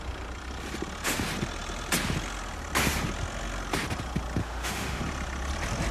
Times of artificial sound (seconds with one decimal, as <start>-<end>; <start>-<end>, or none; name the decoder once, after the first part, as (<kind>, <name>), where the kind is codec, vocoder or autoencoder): 4.4-5.0 (autoencoder, DAC-VAE)